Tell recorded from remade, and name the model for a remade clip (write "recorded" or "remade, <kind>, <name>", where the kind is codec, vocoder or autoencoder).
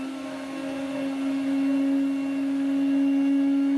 recorded